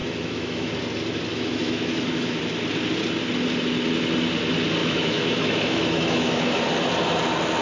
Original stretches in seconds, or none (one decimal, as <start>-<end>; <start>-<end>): 0.7-1.3; 2.4-4.8; 6.6-7.6